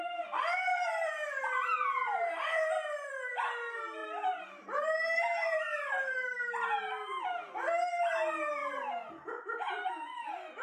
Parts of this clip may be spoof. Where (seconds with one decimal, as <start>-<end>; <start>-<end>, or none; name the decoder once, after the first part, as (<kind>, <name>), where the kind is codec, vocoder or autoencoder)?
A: 0.7-3.1 (vocoder, BigVGAN v2); 4.0-7.2; 8.6-9.9